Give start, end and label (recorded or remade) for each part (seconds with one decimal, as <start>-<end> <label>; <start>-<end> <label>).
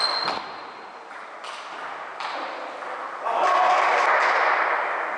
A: 0.0-5.2 recorded